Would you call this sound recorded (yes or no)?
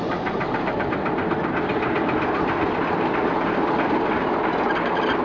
yes